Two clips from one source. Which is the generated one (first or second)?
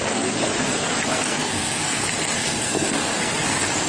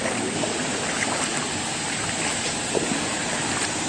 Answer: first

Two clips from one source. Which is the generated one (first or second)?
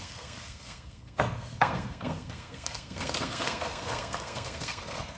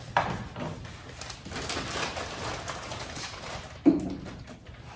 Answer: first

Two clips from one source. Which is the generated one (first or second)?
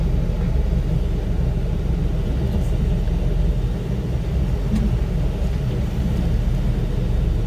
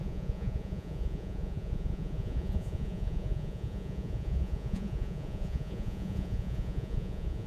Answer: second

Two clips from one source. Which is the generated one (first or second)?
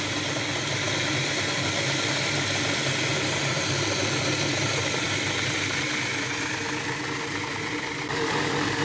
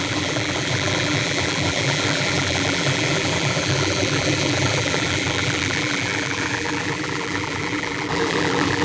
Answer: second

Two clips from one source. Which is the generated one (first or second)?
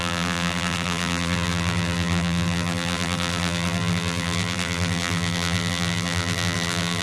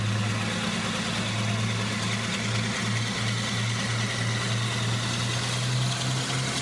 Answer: first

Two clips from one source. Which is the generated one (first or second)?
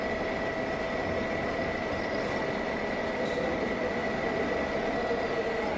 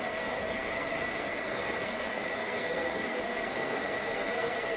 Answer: second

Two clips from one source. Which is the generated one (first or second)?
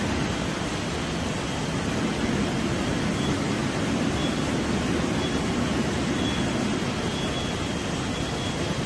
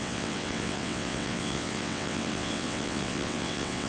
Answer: second